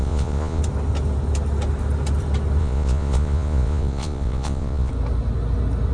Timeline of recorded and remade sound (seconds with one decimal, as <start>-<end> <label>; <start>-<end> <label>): 0.0-0.6 remade; 0.6-2.6 recorded; 2.6-4.9 remade; 4.9-5.9 recorded